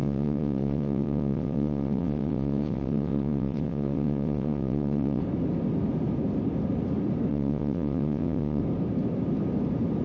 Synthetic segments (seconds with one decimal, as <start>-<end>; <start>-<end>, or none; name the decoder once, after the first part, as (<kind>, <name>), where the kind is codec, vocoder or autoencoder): 0.0-5.2 (vocoder, WaveNeXt); 7.3-8.6